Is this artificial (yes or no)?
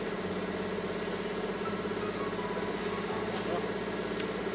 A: no